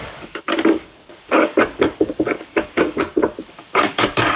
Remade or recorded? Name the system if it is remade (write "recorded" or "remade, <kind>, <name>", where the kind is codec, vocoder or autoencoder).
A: remade, codec, DAC